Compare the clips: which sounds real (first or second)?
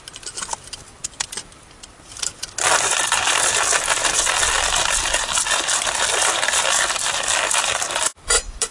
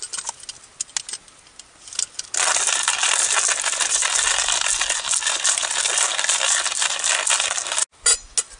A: second